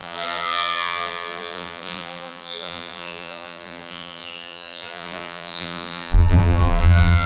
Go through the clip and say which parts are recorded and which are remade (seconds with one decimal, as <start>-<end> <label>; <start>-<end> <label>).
0.0-7.3 remade